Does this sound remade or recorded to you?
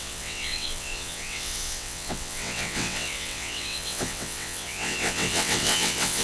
remade